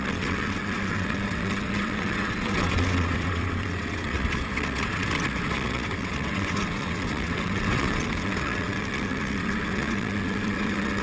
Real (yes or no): no